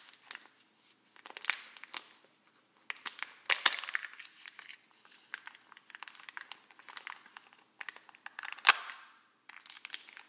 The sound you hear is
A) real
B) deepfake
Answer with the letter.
A